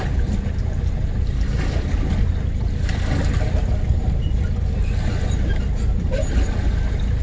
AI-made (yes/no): no